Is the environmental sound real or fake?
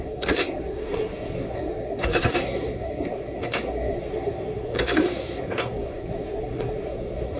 fake